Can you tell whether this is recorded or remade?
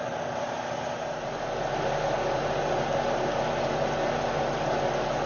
recorded